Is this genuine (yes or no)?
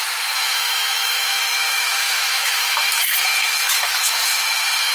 no